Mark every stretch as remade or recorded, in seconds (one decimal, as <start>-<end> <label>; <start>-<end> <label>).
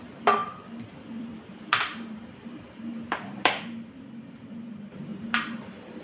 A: 0.0-6.0 remade